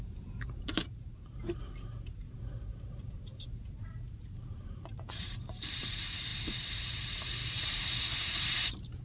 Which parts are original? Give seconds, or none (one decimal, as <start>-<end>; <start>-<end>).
none